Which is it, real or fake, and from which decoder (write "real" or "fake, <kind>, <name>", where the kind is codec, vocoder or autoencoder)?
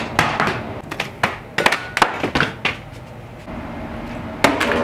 real